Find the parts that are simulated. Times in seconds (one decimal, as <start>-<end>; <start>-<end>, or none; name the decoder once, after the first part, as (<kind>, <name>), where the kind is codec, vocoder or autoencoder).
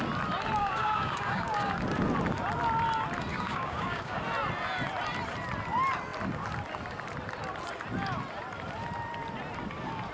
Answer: 0.6-1.7 (codec, DAC); 3.3-4.2